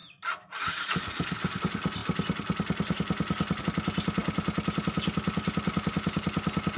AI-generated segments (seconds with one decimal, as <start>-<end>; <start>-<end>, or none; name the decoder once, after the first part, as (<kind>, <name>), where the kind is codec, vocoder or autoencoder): none